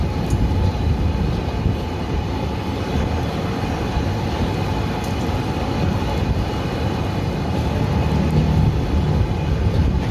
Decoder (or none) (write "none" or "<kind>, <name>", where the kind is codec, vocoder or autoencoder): none